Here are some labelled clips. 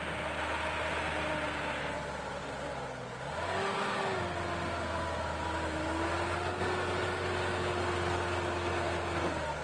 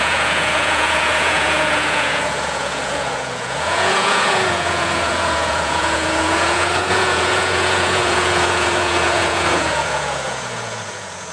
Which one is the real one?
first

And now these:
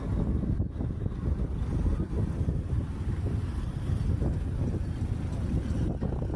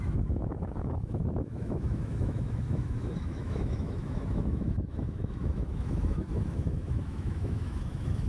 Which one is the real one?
first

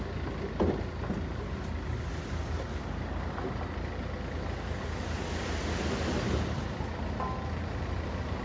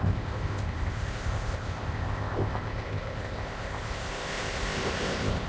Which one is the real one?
first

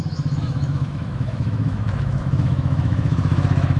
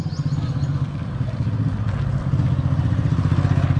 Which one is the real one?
second